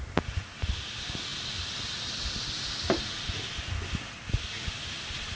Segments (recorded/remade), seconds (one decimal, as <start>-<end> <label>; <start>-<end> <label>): 0.0-5.4 recorded